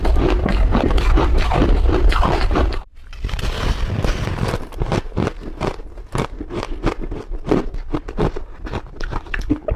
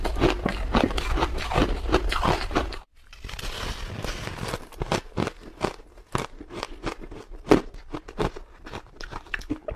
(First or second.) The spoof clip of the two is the first